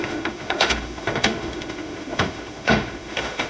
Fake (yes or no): yes